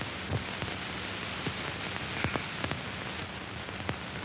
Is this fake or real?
real